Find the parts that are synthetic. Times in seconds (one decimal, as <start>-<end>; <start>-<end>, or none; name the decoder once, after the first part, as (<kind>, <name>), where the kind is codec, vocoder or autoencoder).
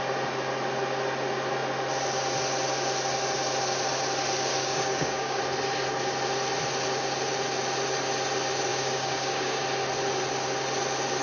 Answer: 4.5-5.4 (codec, DAC); 8.7-9.6